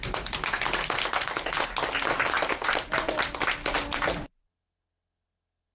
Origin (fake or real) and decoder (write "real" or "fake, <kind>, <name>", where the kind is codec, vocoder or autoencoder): fake, vocoder, BigVGAN v2